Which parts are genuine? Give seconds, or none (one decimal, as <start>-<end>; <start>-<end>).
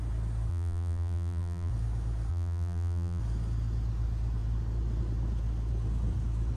0.0-0.5; 1.7-2.3; 3.2-6.6